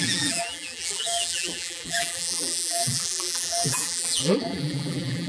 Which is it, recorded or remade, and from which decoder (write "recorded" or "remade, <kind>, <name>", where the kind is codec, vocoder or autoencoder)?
remade, vocoder, BigVGAN v2